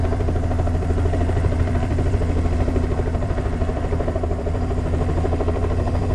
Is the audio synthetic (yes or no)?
yes